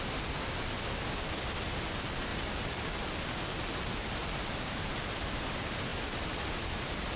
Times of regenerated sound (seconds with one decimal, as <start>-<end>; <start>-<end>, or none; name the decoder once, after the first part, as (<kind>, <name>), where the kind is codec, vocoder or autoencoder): 2.3-3.1 (vocoder, BigVGAN v2); 4.2-5.1; 5.9-7.2